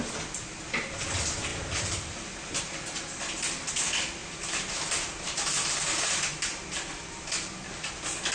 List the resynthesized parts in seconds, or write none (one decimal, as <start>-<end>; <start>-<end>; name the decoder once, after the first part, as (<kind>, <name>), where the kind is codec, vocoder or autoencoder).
none